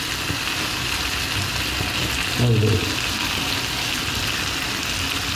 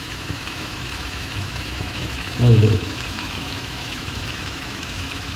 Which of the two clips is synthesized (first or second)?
second